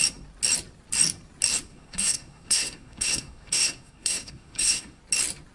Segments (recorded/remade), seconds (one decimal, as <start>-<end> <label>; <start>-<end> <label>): 0.0-1.7 recorded; 1.7-5.0 remade; 5.0-5.5 recorded